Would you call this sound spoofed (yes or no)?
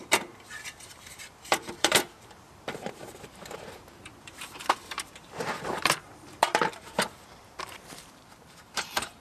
yes